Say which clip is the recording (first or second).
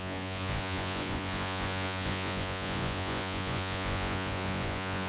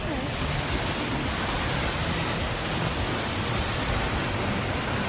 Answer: second